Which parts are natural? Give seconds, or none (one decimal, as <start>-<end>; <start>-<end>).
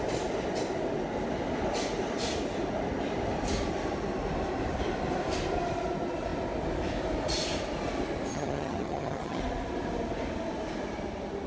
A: 0.0-8.3; 9.4-11.5